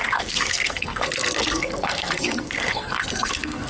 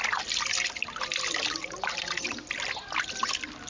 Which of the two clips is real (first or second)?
second